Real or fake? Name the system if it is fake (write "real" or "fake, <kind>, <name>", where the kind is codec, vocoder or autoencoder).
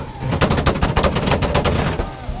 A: real